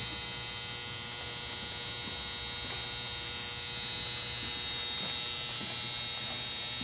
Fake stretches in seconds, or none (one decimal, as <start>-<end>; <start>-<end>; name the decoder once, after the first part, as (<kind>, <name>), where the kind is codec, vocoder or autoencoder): none

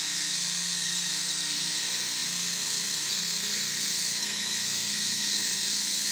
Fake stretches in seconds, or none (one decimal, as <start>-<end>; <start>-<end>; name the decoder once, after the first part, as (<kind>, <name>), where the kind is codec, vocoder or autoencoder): 0.0-6.1 (codec, SNAC)

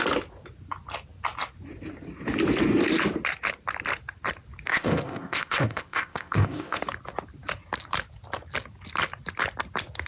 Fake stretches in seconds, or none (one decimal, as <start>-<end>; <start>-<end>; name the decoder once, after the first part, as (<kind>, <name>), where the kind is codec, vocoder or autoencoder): 4.7-6.8 (codec, ZipCodec)

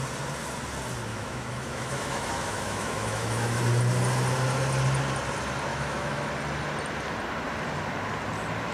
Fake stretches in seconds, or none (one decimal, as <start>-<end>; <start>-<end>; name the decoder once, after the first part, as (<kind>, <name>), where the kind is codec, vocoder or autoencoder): 1.1-3.6 (autoencoder, DAC-VAE); 5.7-6.3